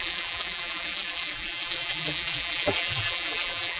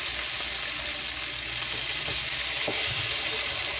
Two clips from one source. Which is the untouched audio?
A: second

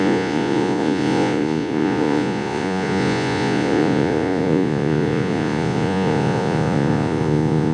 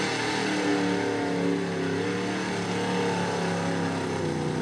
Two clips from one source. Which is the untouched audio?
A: second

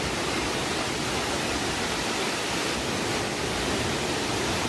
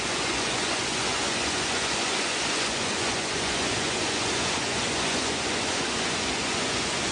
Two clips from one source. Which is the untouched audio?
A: first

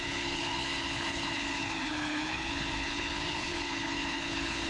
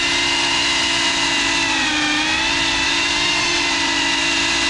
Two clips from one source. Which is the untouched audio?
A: second